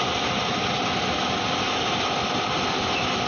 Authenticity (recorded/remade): recorded